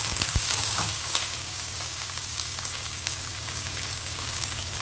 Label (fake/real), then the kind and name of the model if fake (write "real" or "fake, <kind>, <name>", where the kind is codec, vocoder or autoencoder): fake, codec, DAC